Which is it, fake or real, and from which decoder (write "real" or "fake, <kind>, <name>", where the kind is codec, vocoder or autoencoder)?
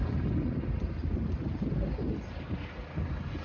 real